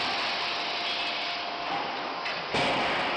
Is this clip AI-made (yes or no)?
no